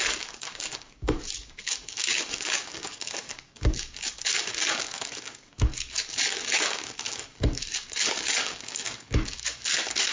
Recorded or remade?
remade